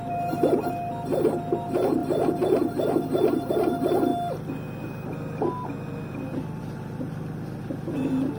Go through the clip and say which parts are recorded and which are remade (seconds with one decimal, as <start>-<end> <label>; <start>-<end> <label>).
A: 0.0-8.4 recorded